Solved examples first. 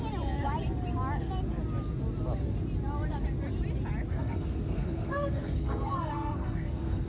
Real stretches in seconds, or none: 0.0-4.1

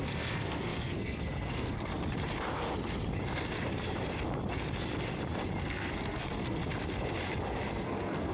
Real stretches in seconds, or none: 1.9-5.6; 6.6-7.7

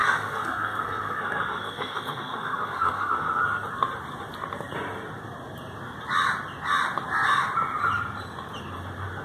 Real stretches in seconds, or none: 3.4-9.2